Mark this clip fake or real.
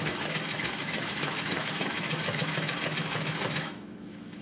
fake